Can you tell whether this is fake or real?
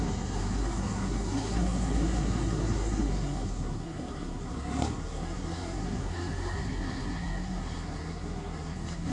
fake